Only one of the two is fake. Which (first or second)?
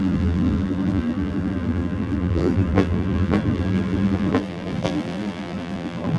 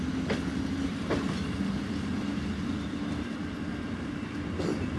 first